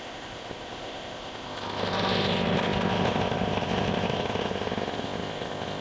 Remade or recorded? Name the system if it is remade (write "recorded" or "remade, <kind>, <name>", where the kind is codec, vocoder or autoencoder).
remade, codec, ZipCodec